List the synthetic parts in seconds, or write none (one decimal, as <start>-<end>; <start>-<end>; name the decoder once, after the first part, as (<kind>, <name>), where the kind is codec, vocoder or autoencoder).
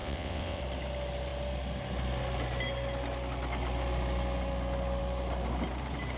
0.0-0.6 (vocoder, WaveNeXt)